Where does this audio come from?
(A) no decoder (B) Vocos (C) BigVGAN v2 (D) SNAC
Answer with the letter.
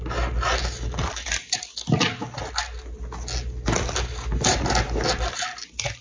A